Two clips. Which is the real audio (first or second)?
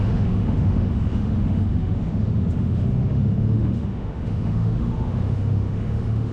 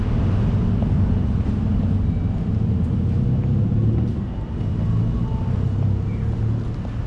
second